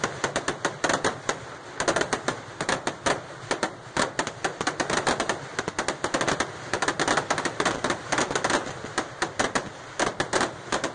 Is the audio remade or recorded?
recorded